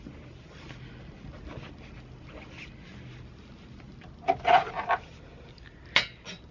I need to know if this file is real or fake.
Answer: real